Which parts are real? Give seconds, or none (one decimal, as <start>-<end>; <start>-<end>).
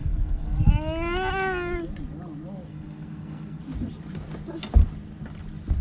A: 0.7-2.7; 3.6-5.8